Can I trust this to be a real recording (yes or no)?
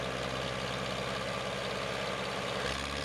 yes